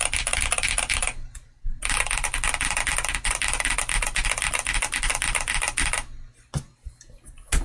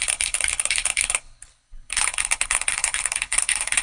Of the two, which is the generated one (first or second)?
second